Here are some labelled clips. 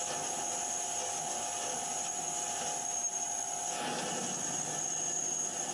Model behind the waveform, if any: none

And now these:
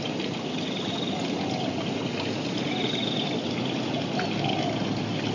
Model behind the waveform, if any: none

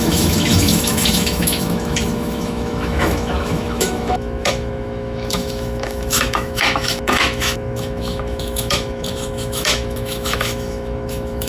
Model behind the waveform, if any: autoencoder, DAC-VAE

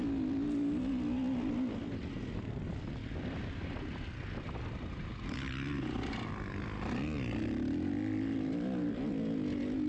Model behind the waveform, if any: none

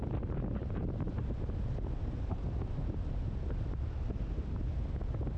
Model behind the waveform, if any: none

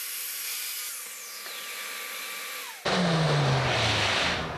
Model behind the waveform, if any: none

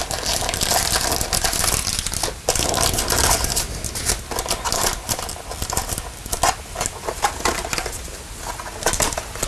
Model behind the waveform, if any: none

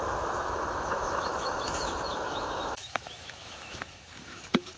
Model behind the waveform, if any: autoencoder, DAC-VAE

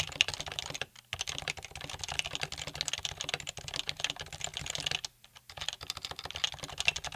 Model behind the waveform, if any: none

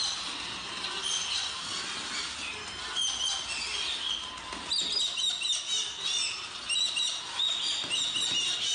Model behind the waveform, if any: none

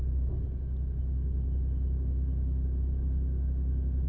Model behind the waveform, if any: none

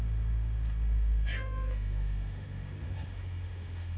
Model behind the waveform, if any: autoencoder, DAC-VAE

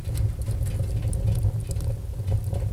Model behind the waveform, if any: none